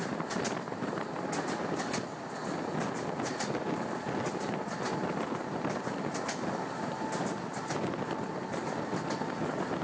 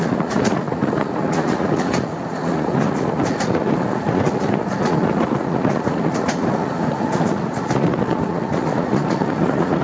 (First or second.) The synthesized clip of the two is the second